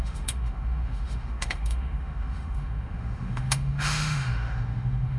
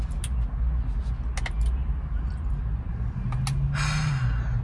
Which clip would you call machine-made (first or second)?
first